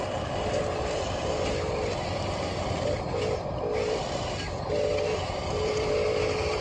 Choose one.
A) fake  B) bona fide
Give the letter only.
B